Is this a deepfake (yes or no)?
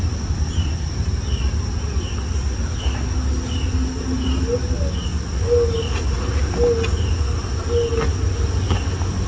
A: no